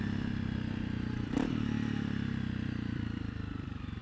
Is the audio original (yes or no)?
no